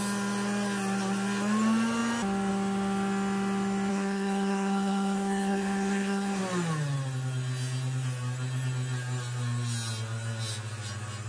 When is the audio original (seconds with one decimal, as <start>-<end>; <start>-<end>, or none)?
0.0-3.9; 6.4-11.3